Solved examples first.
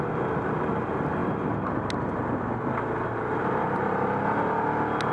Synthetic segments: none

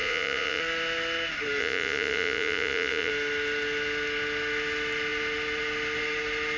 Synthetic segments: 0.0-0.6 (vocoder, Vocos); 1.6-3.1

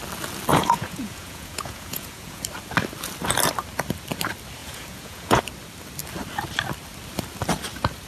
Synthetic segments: 0.5-2.4 (vocoder, Vocos); 4.6-5.4